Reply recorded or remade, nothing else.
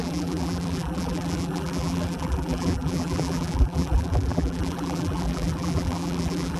remade